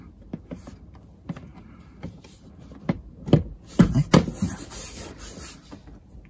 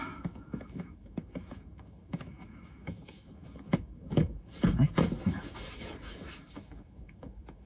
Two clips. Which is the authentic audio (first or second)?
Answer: first